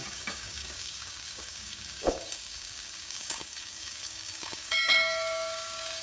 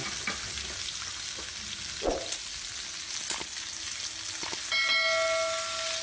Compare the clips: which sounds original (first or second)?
second